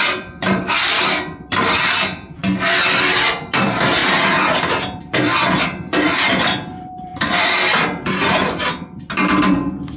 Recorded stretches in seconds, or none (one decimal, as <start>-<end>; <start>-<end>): 2.4-2.9; 4.0-5.0; 7.1-9.5